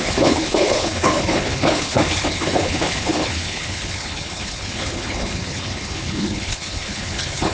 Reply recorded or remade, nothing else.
remade